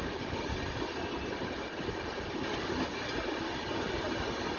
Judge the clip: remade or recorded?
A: recorded